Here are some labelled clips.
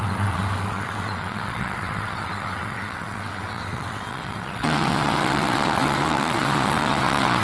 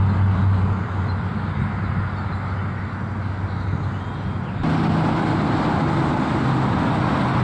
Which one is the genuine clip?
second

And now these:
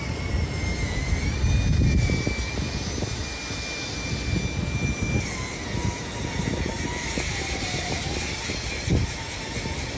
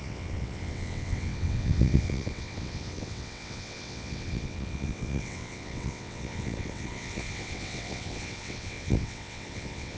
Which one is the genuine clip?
first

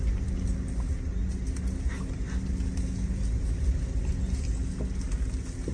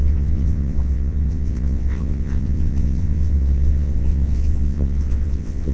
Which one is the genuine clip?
first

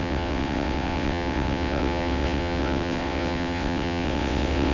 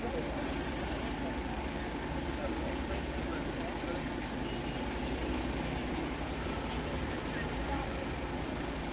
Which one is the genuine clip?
second